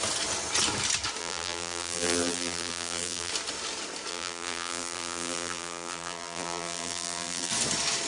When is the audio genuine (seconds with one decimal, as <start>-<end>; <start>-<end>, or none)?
0.0-1.2; 3.3-4.1; 7.5-8.1